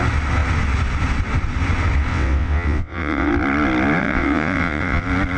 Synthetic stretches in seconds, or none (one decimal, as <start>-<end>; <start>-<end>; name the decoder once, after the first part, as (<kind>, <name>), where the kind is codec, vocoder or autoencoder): 2.1-3.3 (vocoder, WaveNeXt); 4.0-5.0